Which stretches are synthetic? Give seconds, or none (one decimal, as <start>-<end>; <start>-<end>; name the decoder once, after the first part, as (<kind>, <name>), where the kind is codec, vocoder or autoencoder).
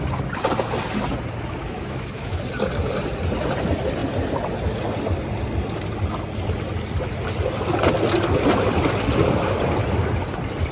1.6-2.4 (autoencoder, DAC-VAE)